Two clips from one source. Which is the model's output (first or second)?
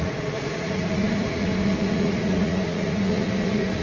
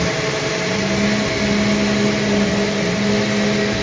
first